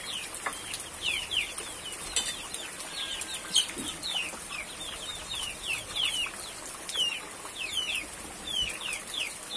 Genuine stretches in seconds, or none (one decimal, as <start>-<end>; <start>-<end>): 0.0-9.6